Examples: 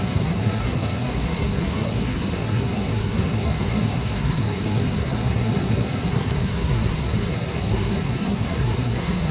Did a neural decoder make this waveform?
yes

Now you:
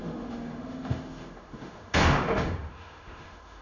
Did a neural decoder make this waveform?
yes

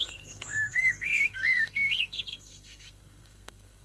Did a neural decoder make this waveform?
yes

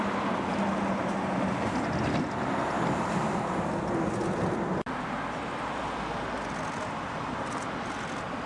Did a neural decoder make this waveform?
no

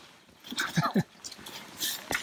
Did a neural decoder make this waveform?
no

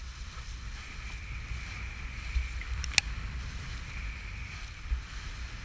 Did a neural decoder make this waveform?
no